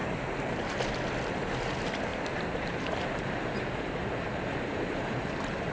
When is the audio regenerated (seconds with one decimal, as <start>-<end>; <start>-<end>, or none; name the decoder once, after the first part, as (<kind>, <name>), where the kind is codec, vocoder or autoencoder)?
0.0-0.6 (vocoder, BigVGAN v2); 2.1-5.7